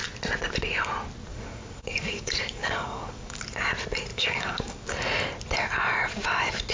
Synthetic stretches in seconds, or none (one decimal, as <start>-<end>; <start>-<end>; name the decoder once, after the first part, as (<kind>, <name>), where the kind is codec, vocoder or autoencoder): 1.3-3.4 (codec, DAC); 4.1-4.9

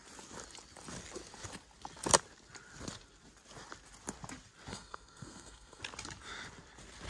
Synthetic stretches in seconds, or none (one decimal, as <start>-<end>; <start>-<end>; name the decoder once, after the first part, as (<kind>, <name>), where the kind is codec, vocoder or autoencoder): 4.7-5.8 (codec, SNAC)

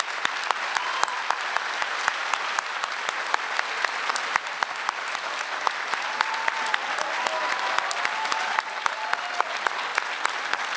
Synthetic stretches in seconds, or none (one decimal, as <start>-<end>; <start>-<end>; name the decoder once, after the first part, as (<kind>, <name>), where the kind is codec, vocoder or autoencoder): none

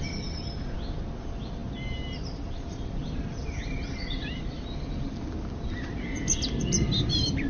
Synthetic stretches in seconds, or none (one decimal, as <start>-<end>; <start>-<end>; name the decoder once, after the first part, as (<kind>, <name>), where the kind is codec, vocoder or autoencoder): none

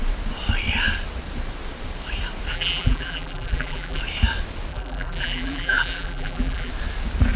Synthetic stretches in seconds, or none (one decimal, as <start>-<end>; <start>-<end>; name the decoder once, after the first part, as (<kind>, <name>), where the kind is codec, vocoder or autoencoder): 2.5-4.0 (vocoder, BigVGAN v2); 4.7-6.7

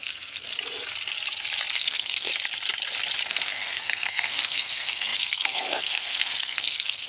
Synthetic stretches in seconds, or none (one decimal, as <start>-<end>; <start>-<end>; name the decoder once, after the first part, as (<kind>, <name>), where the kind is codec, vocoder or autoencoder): 0.0-0.5 (codec, SNAC); 1.7-2.3; 3.3-7.1